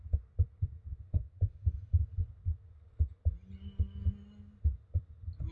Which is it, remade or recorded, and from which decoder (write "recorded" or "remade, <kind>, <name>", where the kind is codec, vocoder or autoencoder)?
recorded